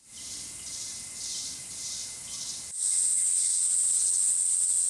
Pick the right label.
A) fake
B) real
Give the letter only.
B